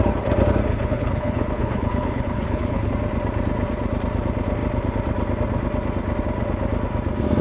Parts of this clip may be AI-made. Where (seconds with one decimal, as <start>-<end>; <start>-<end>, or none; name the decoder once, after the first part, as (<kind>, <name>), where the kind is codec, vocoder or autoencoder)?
0.7-2.9 (codec, HILCodec)